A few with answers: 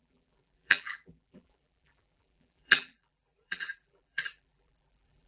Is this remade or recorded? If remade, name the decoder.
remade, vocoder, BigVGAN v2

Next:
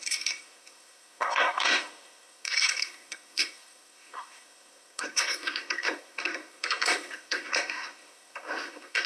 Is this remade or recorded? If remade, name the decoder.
remade, codec, SNAC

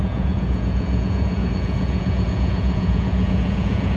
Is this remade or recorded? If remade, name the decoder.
remade, vocoder, Vocos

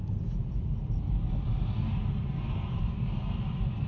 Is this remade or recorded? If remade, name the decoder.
recorded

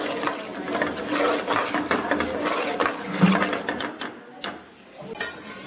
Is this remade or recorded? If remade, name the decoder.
recorded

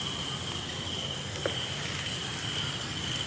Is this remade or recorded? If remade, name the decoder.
recorded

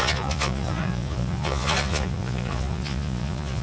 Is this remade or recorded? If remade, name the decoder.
remade, vocoder, Vocos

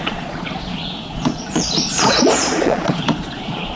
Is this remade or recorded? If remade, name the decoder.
remade, vocoder, Vocos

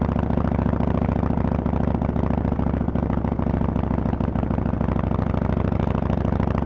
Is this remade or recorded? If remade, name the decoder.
recorded